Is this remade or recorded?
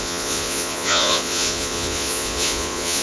remade